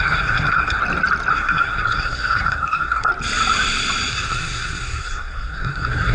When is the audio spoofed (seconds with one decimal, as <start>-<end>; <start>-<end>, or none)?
0.0-0.8; 1.3-3.1; 4.1-6.1